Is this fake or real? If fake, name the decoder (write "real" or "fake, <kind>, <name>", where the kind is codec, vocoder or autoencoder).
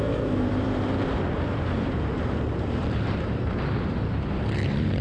fake, vocoder, BigVGAN v2